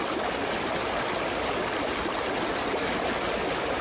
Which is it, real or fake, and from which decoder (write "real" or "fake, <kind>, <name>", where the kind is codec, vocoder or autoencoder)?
real